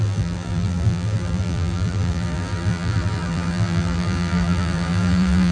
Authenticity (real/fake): fake